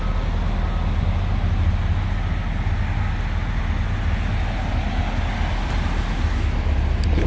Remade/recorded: recorded